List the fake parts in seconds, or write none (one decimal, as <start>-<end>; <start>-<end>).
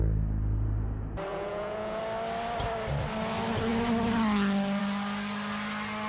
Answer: 1.3-2.0